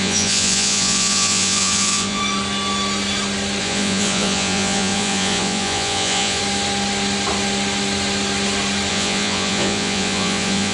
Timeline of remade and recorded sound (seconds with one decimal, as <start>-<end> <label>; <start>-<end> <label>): 0.0-2.2 remade; 2.2-3.6 recorded; 3.6-6.4 remade; 6.4-8.9 recorded; 8.9-10.7 remade